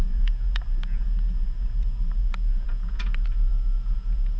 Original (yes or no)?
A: no